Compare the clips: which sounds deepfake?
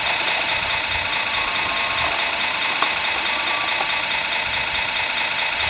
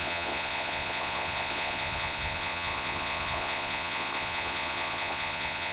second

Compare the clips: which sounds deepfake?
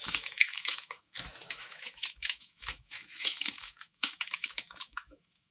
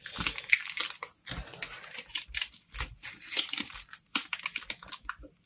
first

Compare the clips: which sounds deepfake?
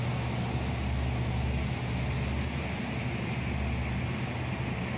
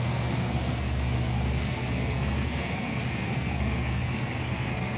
second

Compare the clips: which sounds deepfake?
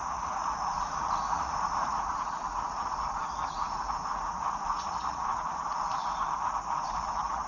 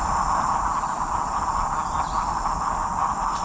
first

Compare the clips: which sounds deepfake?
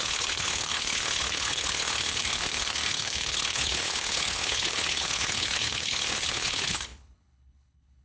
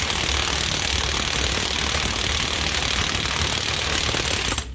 first